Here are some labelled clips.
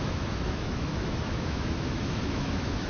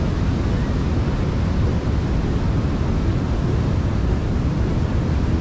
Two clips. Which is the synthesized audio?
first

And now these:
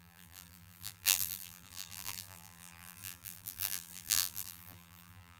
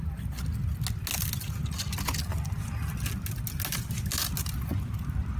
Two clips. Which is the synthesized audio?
first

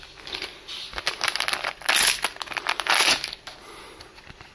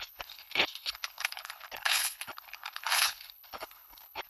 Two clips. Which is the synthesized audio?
second